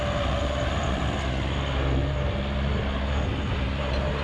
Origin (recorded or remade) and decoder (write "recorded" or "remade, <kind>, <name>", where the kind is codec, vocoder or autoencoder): recorded